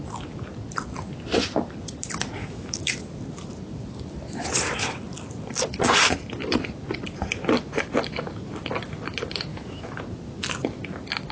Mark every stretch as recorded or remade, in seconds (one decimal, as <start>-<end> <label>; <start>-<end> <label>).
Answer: 0.0-2.4 recorded; 2.4-3.0 remade; 3.0-9.5 recorded; 9.5-10.0 remade; 10.0-11.3 recorded